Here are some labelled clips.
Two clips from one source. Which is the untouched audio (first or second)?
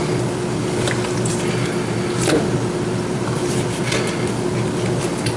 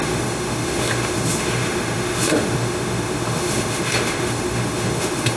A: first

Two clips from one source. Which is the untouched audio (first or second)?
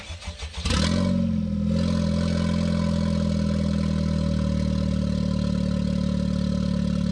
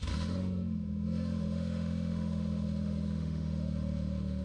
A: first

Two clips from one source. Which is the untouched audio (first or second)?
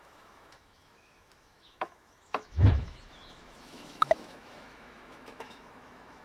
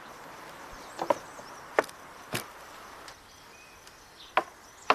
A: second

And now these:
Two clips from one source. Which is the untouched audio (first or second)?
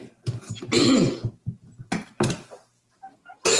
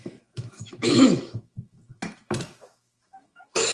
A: first